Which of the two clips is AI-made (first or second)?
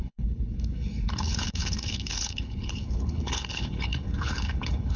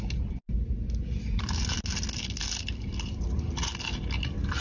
first